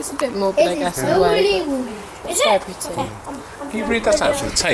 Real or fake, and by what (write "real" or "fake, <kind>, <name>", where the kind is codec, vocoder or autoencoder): fake, vocoder, Vocos